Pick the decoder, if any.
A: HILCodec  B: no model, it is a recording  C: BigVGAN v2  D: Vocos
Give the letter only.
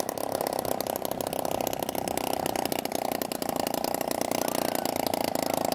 B